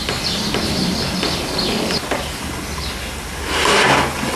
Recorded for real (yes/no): yes